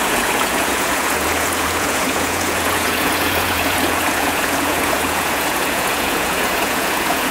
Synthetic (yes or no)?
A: yes